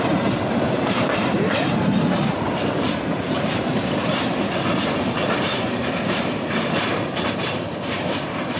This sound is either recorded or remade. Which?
remade